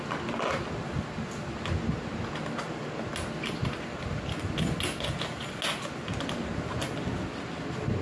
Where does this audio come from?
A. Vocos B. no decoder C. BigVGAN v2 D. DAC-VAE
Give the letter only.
B